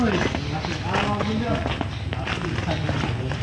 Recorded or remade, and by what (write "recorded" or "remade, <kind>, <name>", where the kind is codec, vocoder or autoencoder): recorded